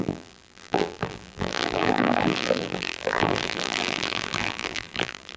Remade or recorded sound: remade